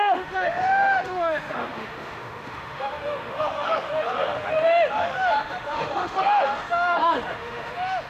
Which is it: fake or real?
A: fake